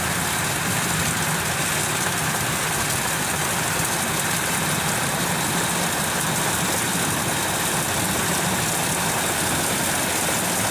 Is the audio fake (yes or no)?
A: no